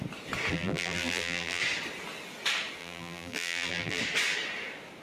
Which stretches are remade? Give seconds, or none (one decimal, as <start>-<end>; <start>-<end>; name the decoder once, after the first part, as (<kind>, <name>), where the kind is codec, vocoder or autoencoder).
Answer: 0.5-1.6 (vocoder, BigVGAN v2); 2.8-4.0